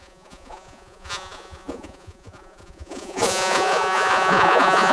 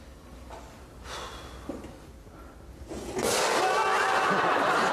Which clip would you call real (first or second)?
second